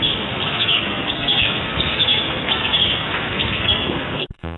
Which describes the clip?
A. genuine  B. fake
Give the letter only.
B